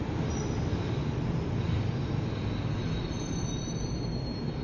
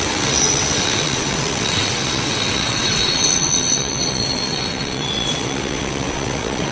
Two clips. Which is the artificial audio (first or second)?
second